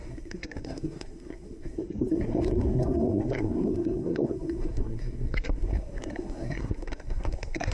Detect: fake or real fake